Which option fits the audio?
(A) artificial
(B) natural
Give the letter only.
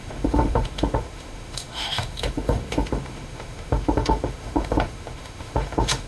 A